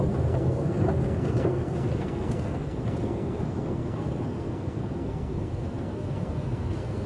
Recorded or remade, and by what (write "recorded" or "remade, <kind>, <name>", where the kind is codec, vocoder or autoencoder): remade, codec, SNAC